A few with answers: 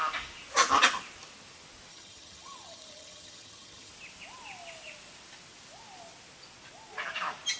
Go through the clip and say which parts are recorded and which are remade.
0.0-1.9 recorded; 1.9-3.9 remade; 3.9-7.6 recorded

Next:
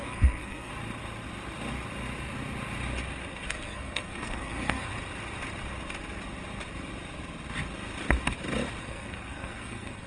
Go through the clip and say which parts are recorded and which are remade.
0.0-0.7 remade; 0.7-3.3 recorded; 3.3-4.9 remade; 4.9-8.8 recorded; 8.8-10.1 remade

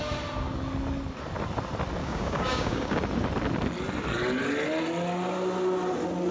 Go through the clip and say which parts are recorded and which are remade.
0.0-2.0 recorded; 2.0-3.0 remade; 3.0-6.3 recorded

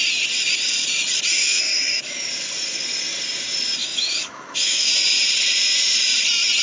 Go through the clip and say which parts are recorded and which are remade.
0.0-1.4 recorded; 1.4-2.3 remade; 2.3-3.8 recorded; 3.8-4.9 remade; 4.9-6.6 recorded